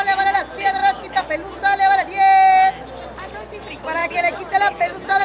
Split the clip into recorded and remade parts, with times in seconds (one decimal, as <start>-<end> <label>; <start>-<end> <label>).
0.0-5.2 recorded